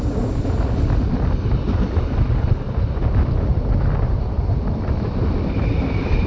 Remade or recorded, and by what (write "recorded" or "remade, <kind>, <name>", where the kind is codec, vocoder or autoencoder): recorded